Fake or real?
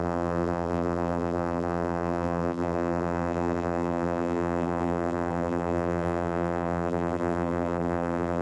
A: fake